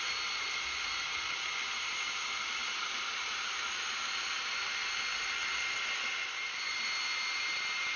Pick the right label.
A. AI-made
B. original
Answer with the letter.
B